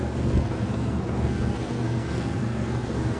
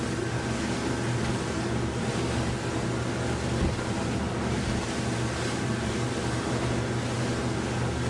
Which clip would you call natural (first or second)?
second